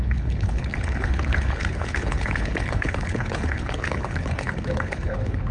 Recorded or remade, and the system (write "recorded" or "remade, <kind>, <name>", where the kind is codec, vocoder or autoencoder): remade, codec, HILCodec